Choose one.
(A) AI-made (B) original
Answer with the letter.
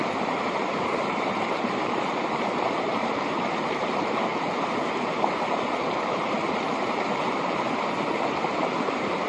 A